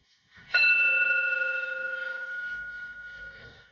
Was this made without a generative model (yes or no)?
no